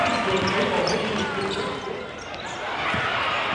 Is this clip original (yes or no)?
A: yes